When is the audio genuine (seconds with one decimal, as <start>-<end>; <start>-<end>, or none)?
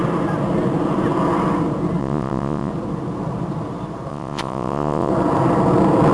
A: 0.0-2.0; 2.7-4.1; 5.1-6.1